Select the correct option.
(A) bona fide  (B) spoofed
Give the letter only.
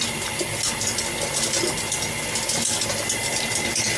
A